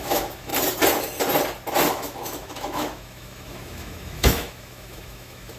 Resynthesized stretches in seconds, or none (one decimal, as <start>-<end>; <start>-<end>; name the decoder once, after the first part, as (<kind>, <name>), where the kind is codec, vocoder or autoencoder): 0.0-0.5 (autoencoder, DAC-VAE); 1.9-5.6